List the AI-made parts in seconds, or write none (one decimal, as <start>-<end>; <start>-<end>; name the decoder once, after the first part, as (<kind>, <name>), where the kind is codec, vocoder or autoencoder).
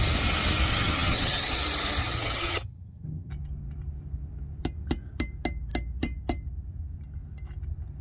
0.7-1.6 (vocoder, HiFi-GAN); 2.0-3.3